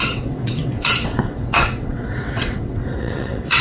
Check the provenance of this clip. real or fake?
fake